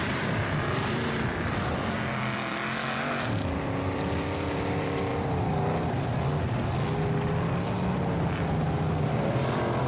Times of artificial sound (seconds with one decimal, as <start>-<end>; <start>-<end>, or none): 0.0-5.1; 9.3-9.9